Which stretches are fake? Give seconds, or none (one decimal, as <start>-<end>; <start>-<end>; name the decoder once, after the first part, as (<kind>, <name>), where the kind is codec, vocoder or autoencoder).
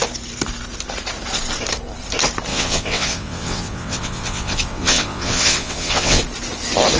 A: 2.5-6.2 (vocoder, WaveNeXt)